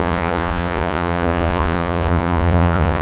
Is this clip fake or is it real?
fake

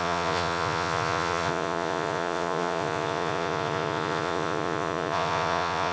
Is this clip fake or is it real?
fake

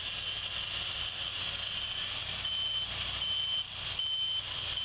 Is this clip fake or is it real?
real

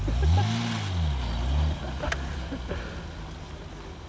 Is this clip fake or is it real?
real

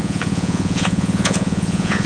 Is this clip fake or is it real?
fake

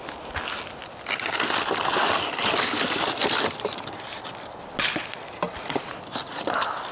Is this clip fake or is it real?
real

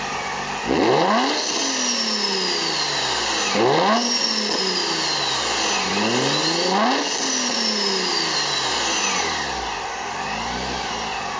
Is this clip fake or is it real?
real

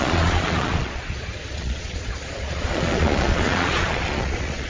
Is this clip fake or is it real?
fake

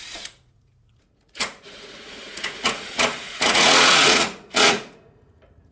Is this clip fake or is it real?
fake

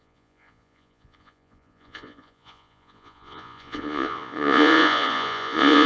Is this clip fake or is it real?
fake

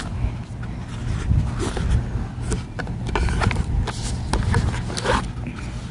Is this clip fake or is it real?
real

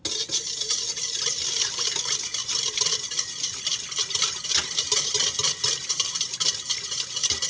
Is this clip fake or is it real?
real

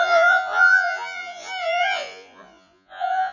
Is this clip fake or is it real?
fake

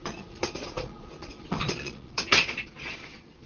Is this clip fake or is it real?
fake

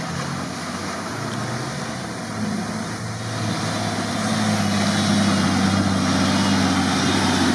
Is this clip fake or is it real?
real